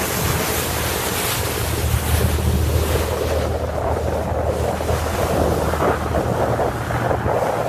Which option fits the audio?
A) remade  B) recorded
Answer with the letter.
B